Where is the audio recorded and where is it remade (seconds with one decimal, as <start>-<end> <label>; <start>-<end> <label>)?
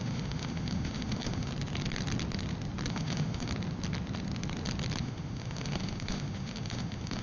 0.0-1.5 remade; 1.5-2.9 recorded; 2.9-3.5 remade; 3.5-5.0 recorded; 5.0-7.2 remade